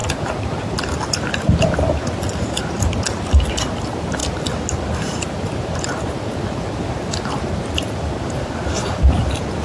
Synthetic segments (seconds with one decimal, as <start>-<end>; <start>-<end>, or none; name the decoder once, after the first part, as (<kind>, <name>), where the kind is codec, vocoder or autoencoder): none